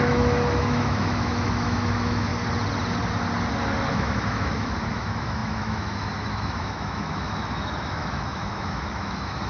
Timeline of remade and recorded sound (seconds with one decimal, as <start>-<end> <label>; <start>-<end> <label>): 0.0-2.3 remade; 2.3-3.9 recorded; 3.9-9.5 remade